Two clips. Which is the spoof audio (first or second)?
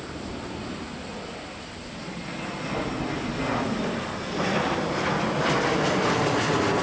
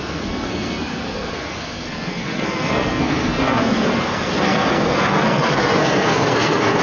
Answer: second